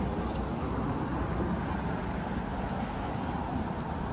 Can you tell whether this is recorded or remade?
recorded